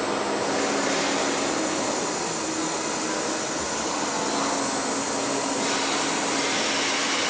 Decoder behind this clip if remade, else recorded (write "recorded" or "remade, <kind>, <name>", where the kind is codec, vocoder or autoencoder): recorded